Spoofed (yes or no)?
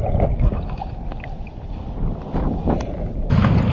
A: no